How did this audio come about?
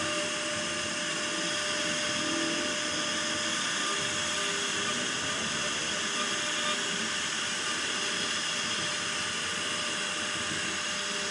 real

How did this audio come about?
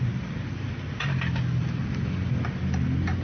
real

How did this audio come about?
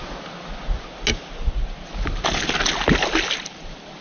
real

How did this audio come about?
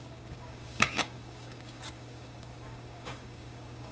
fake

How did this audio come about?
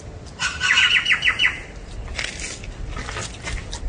real